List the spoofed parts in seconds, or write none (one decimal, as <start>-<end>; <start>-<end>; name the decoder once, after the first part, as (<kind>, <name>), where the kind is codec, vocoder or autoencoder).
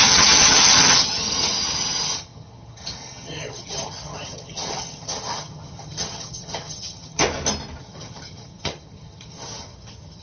0.0-7.2 (vocoder, HiFi-GAN); 7.8-10.2